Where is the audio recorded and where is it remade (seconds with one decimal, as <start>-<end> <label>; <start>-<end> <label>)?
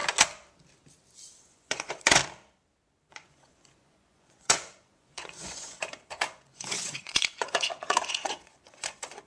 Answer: 0.0-1.4 recorded; 1.4-2.2 remade; 2.2-3.1 recorded; 3.1-9.3 remade